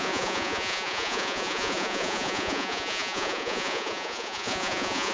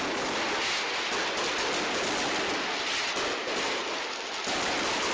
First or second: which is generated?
first